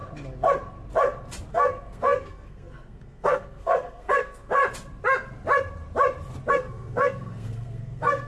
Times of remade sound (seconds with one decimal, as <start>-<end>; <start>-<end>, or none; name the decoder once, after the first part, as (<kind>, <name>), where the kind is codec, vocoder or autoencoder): 1.5-4.6 (codec, SNAC); 6.5-8.3